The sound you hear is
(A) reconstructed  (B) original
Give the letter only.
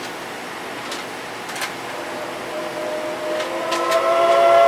B